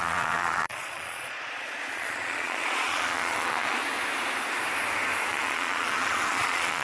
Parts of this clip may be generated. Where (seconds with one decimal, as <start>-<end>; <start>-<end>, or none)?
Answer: 0.0-3.8; 5.3-6.8